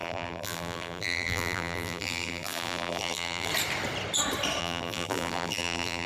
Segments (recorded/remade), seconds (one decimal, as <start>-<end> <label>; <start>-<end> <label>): 0.0-3.5 remade; 3.5-4.6 recorded; 4.6-6.1 remade

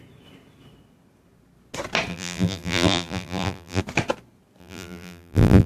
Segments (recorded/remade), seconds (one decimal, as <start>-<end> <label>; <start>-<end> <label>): 0.0-2.1 recorded; 2.1-3.8 remade; 3.8-4.6 recorded; 4.6-5.7 remade

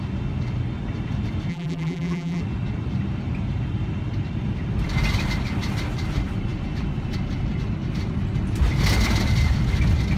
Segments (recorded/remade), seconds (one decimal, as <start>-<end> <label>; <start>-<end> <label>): 0.0-1.5 recorded; 1.5-2.4 remade; 2.4-10.2 recorded

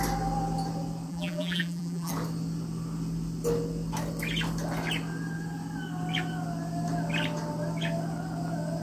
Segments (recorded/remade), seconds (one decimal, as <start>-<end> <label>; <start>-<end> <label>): 0.0-1.1 recorded; 1.1-2.1 remade; 2.1-8.8 recorded

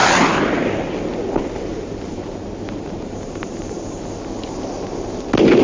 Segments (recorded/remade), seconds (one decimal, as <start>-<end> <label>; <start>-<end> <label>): 0.0-1.7 recorded; 1.7-4.0 remade; 4.0-5.6 recorded

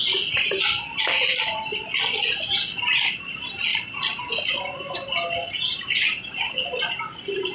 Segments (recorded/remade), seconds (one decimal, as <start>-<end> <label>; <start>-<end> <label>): 0.0-7.5 recorded

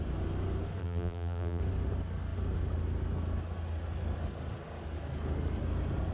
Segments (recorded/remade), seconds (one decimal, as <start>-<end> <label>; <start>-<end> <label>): 0.0-0.8 recorded; 0.8-1.6 remade; 1.6-6.1 recorded

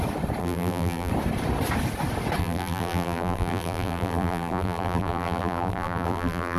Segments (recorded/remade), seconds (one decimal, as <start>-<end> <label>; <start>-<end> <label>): 0.0-0.4 recorded; 0.4-1.1 remade; 1.1-2.4 recorded; 2.4-6.6 remade